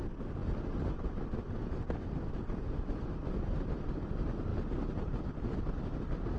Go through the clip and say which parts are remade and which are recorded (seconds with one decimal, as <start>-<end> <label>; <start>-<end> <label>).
0.0-6.4 recorded

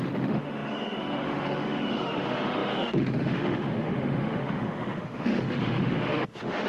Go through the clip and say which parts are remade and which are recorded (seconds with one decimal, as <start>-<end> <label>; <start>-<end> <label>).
0.0-6.7 remade